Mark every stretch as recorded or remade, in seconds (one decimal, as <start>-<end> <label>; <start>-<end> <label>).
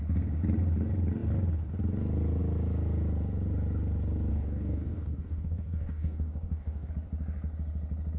0.0-4.3 recorded; 4.3-6.9 remade; 6.9-8.2 recorded